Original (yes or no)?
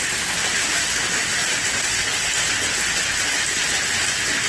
yes